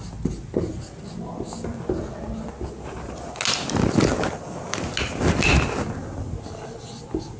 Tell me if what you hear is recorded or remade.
recorded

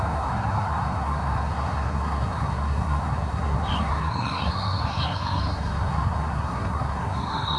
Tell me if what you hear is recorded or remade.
remade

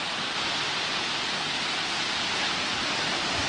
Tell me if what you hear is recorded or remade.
recorded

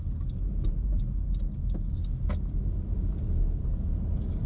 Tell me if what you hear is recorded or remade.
recorded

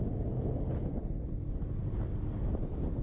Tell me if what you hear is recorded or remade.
recorded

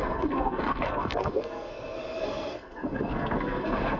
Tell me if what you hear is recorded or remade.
remade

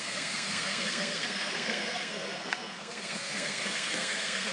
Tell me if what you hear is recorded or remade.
remade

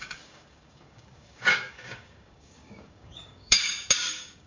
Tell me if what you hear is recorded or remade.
remade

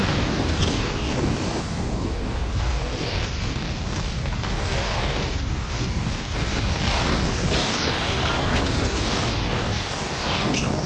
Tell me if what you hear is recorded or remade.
remade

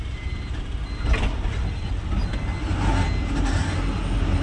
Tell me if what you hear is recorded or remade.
recorded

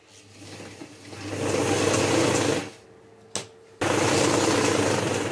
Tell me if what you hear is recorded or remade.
recorded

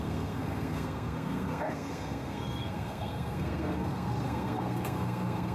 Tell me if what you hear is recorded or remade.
remade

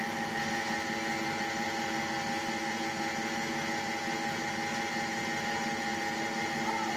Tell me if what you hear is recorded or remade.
remade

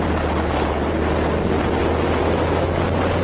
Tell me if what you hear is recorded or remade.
recorded